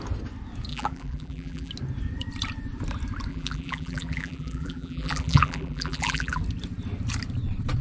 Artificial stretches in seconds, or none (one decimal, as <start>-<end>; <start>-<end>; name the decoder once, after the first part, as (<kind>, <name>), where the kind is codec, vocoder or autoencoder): 0.7-1.7 (vocoder, BigVGAN v2); 3.3-6.4